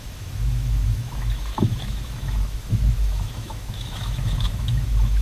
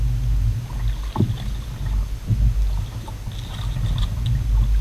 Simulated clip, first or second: first